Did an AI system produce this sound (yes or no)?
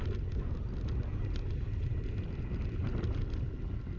no